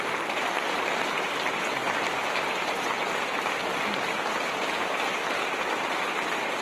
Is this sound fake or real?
real